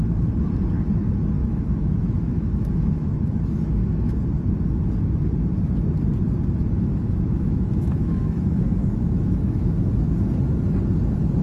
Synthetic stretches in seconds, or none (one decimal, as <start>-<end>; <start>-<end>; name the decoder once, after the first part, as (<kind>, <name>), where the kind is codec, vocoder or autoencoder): 1.4-4.1 (autoencoder, DAC-VAE); 7.0-9.9